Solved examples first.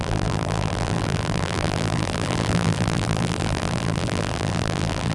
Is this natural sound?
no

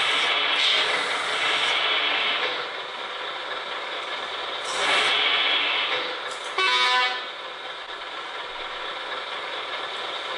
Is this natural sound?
yes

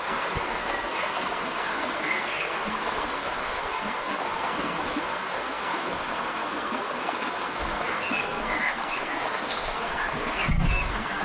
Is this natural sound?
no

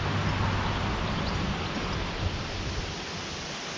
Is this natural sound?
yes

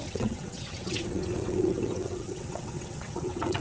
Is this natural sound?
no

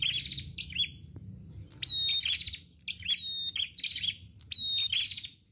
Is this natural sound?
yes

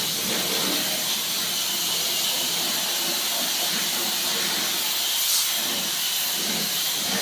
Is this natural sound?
no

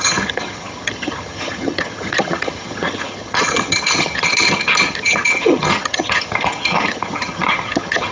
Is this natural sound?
no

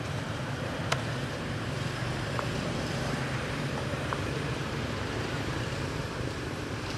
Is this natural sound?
no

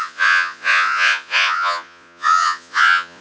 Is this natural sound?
no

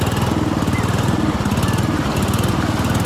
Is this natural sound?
yes